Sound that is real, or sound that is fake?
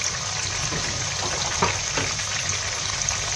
real